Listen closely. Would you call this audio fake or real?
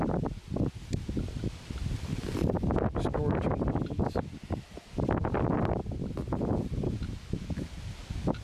real